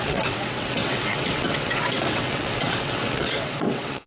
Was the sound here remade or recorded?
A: remade